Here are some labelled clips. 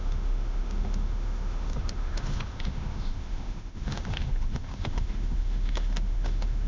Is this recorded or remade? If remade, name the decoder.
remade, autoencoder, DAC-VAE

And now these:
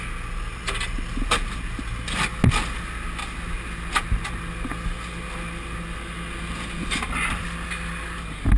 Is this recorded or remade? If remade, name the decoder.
recorded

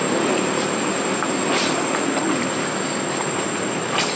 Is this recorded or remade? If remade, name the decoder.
recorded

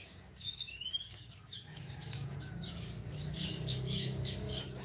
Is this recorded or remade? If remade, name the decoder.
remade, codec, DAC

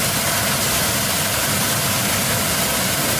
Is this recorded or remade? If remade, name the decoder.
recorded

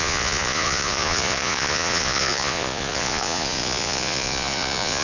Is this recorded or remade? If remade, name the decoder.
remade, vocoder, Vocos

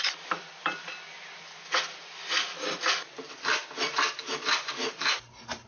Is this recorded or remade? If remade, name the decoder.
recorded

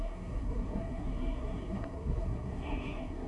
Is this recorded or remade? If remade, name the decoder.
remade, codec, SNAC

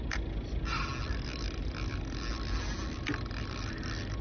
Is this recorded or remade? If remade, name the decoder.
recorded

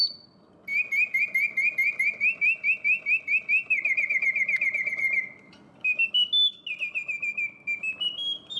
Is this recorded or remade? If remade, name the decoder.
recorded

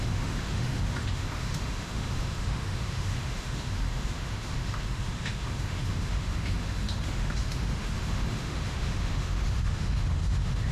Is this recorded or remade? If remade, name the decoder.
remade, autoencoder, DAC-VAE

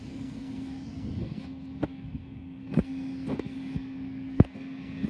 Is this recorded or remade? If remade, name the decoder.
remade, codec, SNAC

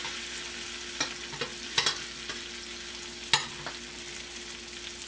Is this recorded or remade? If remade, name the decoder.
recorded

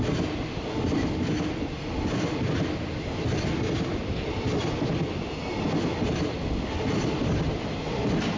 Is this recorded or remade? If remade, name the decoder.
recorded